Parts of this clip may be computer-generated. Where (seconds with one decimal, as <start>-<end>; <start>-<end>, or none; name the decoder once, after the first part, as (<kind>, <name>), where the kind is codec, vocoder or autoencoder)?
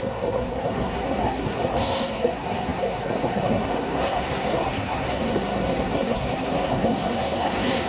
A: 0.0-7.9 (codec, SNAC)